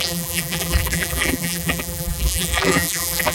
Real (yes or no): no